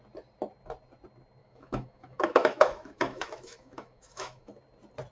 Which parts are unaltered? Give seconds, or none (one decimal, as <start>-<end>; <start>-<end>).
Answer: 0.0-1.4; 4.5-5.1